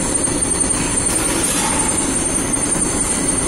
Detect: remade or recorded recorded